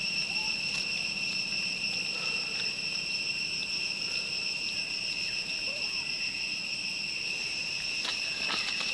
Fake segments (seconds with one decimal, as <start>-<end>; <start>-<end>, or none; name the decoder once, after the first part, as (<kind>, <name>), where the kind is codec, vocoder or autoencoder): 0.0-8.9 (vocoder, BigVGAN v2)